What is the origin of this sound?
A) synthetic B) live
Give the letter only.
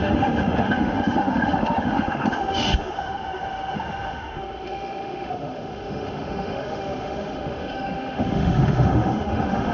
A